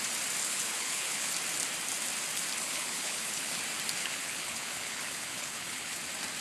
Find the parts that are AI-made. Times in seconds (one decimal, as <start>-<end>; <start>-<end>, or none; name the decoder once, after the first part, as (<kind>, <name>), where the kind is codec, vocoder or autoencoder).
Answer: 0.4-1.3 (codec, HILCodec); 2.6-3.6; 4.0-6.0